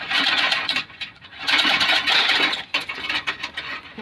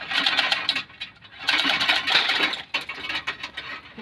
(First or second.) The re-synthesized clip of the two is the first